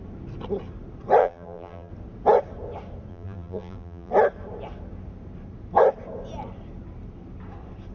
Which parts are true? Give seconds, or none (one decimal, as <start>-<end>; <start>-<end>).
0.0-1.2; 1.9-3.1; 4.1-7.9